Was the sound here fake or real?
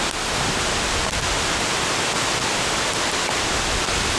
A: real